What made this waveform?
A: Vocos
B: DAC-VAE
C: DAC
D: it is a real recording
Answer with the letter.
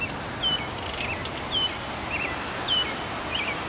D